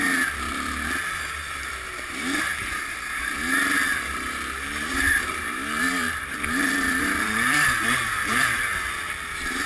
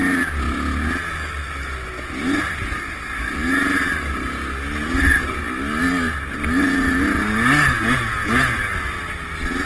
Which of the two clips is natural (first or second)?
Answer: second